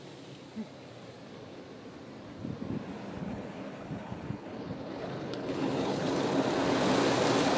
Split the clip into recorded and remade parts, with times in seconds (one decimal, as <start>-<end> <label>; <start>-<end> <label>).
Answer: 0.0-3.2 recorded; 3.2-6.2 remade; 6.2-7.6 recorded